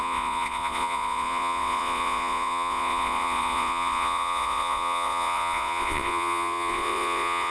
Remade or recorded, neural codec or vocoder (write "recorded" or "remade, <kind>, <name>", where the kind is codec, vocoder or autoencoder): remade, vocoder, Vocos